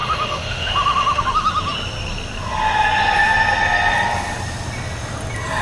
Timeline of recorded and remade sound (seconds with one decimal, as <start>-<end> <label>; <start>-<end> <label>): 0.0-1.2 remade; 1.2-5.6 recorded